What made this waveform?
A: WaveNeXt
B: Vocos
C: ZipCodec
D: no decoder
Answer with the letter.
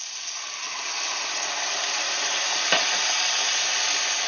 D